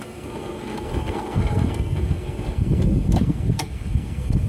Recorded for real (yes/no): no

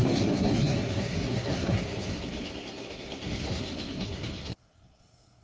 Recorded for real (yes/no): no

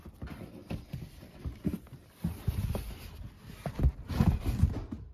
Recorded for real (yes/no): yes